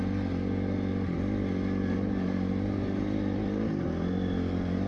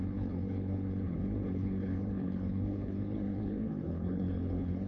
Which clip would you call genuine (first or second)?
first